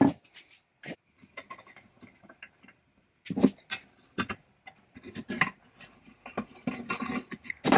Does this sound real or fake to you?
real